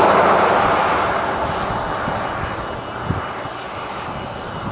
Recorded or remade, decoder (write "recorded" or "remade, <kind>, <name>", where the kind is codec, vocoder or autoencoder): recorded